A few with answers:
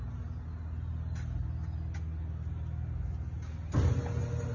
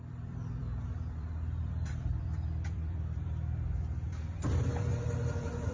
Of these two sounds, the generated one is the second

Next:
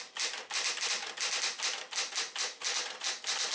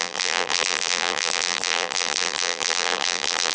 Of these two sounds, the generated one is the second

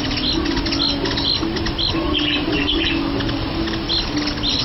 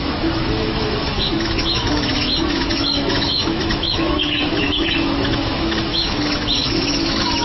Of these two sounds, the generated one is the second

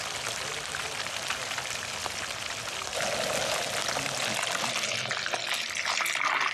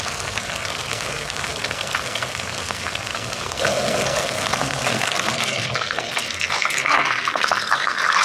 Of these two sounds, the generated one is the second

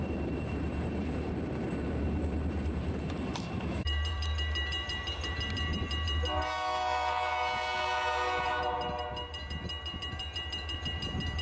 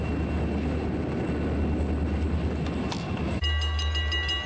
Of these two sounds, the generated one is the first